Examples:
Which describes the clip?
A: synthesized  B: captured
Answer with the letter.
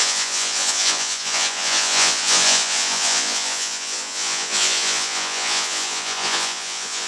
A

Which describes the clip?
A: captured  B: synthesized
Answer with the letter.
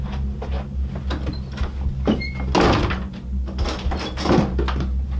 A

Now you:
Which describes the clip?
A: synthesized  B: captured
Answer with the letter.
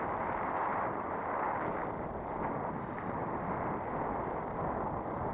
B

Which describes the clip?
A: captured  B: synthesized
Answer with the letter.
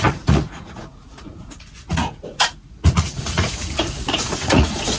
B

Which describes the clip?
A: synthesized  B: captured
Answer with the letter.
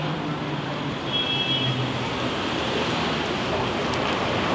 B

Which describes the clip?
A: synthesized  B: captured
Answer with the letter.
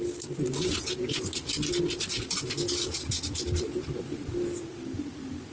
B